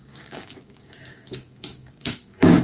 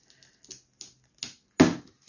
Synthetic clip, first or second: first